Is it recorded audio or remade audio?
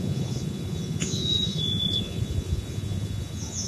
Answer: remade